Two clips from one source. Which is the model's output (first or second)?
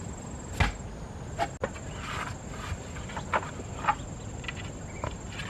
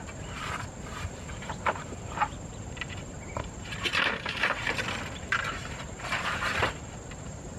second